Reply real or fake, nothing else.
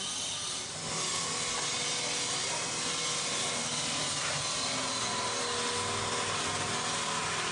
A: real